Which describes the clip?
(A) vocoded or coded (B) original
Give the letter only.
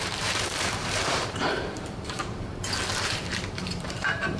A